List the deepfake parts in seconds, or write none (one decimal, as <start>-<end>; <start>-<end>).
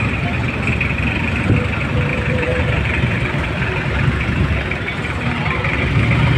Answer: 2.1-5.9